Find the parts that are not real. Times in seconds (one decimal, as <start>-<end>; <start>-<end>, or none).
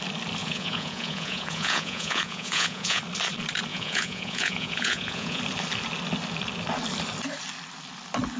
0.4-3.0; 3.7-5.4